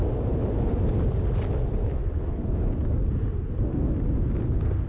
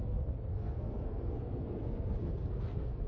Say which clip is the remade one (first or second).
second